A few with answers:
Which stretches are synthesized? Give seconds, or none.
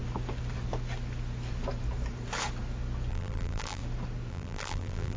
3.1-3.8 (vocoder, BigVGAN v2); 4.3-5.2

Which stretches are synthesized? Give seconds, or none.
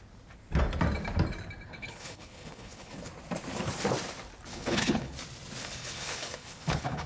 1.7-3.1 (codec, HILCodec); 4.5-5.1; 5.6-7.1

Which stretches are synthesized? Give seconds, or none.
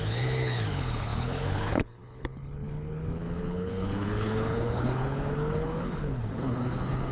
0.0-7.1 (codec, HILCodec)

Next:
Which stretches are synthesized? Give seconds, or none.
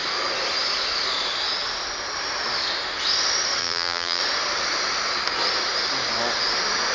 3.6-4.2 (vocoder, BigVGAN v2)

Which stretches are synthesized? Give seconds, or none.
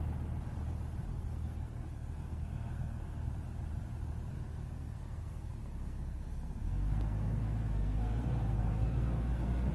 1.1-3.3 (codec, SNAC); 4.3-9.7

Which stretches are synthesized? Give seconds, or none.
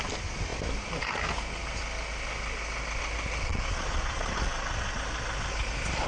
3.5-5.0 (vocoder, Vocos)